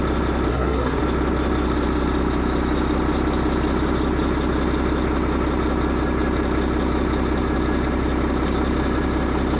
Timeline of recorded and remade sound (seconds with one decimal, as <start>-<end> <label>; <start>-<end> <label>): 0.0-0.5 recorded; 0.5-1.0 remade; 1.0-9.6 recorded